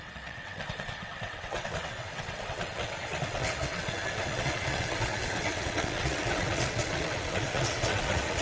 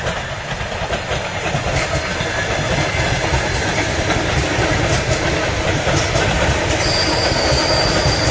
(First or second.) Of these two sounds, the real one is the second